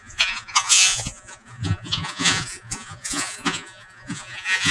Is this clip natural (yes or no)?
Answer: no